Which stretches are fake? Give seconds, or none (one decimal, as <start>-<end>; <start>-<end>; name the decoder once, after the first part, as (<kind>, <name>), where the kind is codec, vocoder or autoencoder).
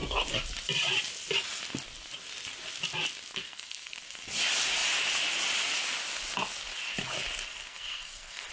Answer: 3.3-4.0 (codec, SNAC); 7.5-8.5